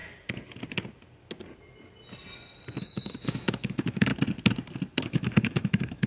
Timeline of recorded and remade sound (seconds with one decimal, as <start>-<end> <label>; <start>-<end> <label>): 0.0-2.8 recorded; 2.8-4.1 remade; 4.1-5.0 recorded; 5.0-6.1 remade